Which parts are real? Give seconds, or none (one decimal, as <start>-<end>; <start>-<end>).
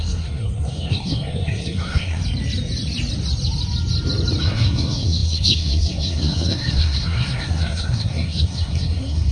2.2-4.4